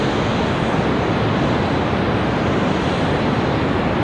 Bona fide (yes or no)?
yes